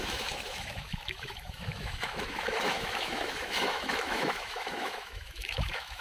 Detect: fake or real fake